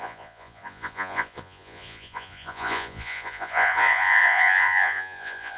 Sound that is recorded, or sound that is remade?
remade